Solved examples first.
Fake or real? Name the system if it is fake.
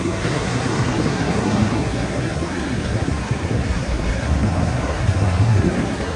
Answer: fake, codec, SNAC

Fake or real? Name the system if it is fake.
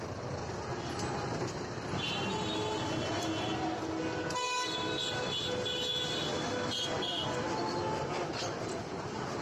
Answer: real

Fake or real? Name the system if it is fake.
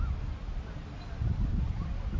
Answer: real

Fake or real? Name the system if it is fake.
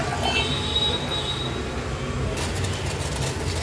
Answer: real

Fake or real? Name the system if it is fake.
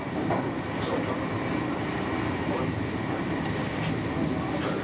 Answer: real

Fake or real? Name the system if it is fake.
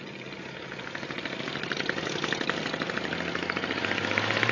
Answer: real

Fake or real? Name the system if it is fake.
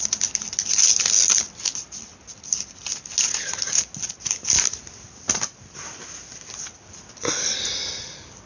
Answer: real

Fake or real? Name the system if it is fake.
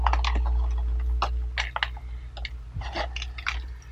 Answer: real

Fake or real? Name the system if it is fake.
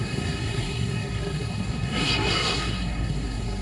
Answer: fake, codec, SNAC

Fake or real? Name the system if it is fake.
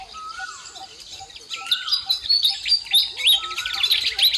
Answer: real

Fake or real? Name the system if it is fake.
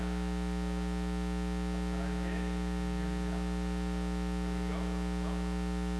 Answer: real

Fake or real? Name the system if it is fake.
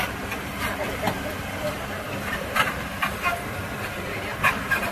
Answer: real